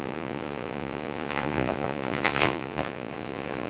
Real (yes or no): no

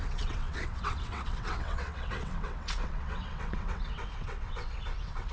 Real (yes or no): no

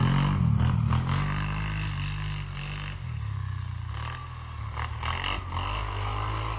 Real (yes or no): yes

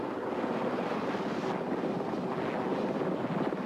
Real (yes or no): yes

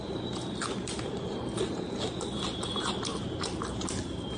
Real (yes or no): yes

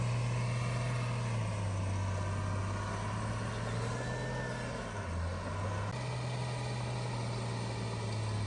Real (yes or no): yes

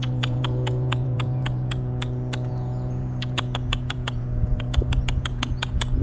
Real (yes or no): no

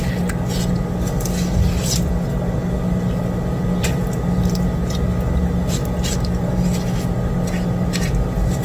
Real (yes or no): yes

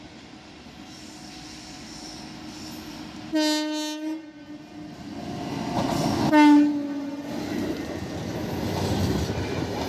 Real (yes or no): yes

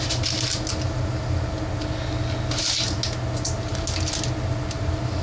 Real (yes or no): yes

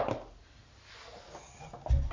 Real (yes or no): yes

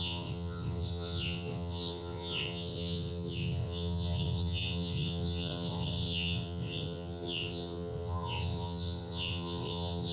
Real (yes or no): no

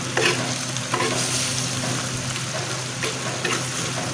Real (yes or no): yes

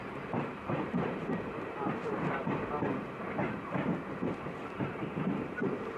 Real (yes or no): no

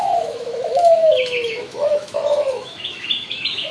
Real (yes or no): no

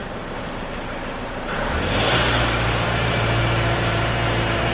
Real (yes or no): no